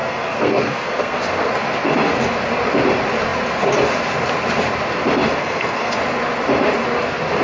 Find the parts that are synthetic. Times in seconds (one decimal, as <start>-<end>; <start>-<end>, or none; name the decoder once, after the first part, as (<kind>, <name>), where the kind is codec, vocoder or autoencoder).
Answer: 0.0-1.5 (codec, SNAC); 5.4-6.0